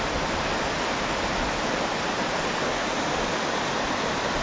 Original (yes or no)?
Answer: yes